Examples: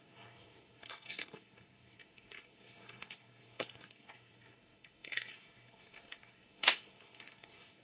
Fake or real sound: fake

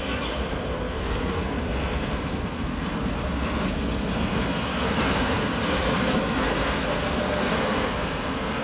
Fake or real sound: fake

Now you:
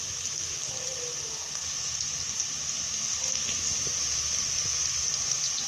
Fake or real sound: real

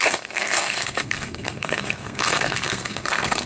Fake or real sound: fake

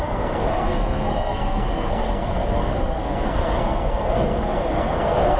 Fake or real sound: fake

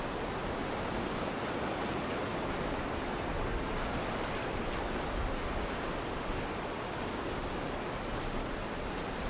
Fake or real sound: real